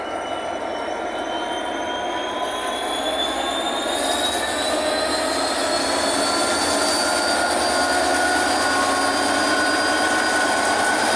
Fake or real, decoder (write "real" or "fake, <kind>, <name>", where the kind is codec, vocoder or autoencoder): real